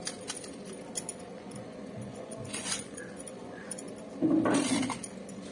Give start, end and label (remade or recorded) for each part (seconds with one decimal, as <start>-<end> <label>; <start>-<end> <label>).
0.0-1.3 recorded; 1.3-3.9 remade; 3.9-5.5 recorded